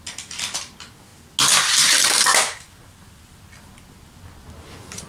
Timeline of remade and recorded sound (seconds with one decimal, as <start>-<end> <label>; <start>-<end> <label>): 0.0-5.1 recorded